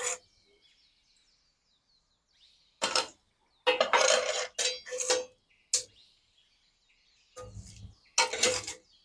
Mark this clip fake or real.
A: real